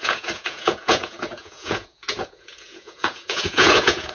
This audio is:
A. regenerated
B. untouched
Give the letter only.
A